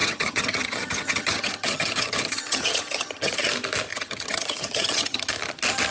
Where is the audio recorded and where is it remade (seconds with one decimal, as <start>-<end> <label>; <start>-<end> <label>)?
0.0-3.5 remade; 3.5-3.9 recorded; 3.9-5.3 remade; 5.3-5.9 recorded